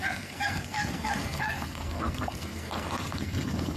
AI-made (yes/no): yes